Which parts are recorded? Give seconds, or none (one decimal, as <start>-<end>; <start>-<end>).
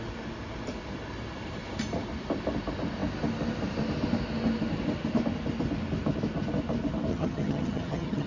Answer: 0.0-7.1